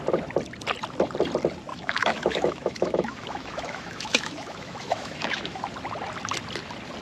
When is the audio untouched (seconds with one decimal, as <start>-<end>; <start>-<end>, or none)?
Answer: 0.0-1.7; 5.6-7.0